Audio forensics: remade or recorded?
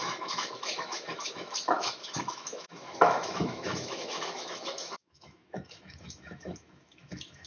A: remade